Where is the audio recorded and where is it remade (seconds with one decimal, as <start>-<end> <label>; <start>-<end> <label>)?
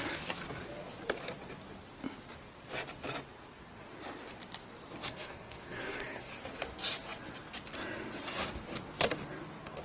0.0-5.1 recorded; 5.1-6.3 remade; 6.3-9.8 recorded